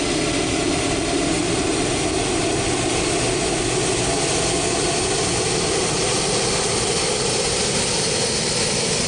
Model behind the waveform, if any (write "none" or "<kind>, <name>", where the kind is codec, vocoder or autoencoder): none